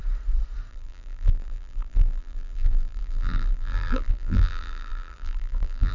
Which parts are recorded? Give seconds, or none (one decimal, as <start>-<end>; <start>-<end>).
0.0-0.7